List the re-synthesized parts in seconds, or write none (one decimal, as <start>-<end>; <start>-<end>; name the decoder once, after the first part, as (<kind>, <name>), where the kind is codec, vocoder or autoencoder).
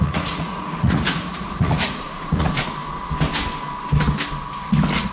0.0-2.8 (vocoder, Vocos)